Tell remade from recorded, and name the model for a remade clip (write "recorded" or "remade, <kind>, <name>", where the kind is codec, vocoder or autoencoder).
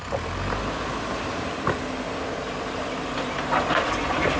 remade, vocoder, BigVGAN v2